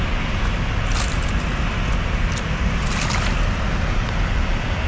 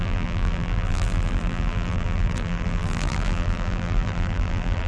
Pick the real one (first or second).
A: first